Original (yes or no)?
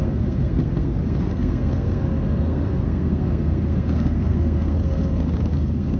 no